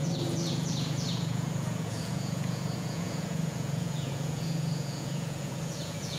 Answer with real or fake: fake